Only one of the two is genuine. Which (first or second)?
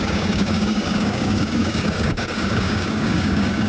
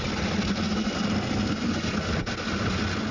second